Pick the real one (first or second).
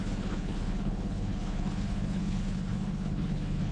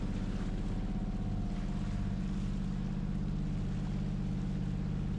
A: second